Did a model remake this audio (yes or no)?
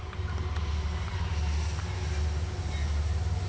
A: no